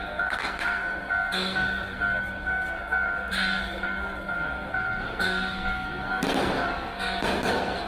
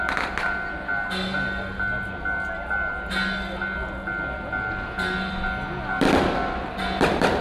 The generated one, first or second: first